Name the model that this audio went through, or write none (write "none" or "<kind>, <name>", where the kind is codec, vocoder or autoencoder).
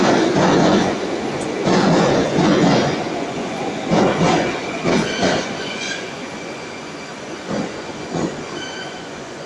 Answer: vocoder, Vocos